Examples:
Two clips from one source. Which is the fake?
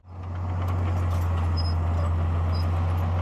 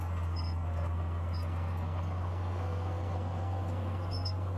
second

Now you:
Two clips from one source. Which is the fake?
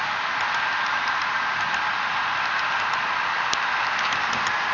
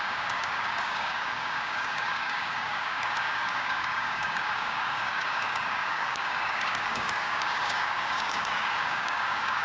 second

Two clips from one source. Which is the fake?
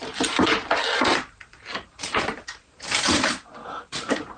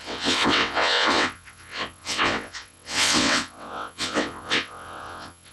second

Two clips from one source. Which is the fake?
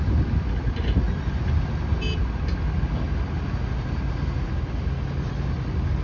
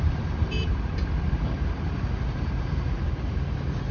second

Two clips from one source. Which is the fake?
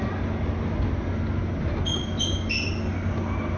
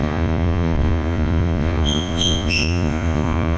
second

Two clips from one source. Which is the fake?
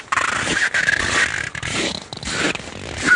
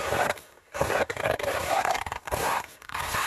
second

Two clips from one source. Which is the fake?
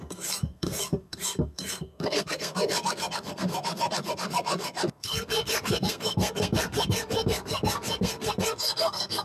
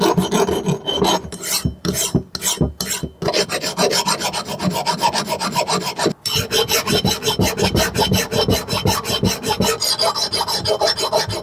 first